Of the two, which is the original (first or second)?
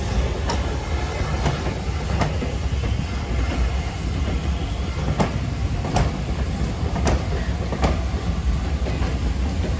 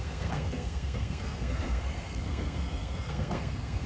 first